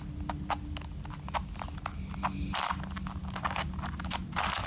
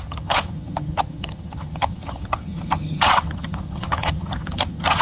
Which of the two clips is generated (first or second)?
second